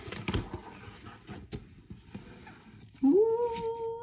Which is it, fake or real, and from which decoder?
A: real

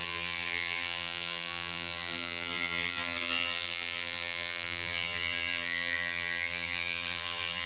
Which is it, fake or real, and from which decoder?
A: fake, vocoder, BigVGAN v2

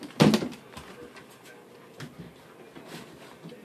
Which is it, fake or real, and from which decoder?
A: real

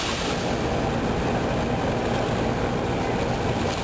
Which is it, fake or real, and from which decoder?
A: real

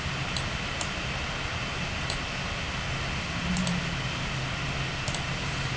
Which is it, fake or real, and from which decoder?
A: real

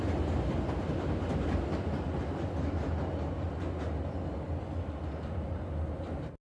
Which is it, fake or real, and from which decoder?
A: real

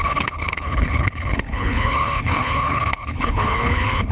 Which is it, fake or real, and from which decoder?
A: fake, codec, HILCodec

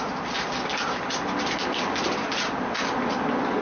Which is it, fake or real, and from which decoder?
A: fake, vocoder, BigVGAN v2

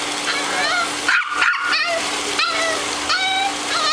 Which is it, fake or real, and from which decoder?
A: real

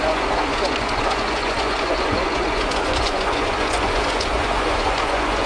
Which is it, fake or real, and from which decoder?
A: fake, vocoder, Vocos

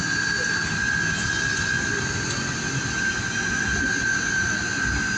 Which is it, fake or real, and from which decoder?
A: real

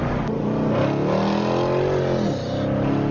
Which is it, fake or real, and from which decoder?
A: real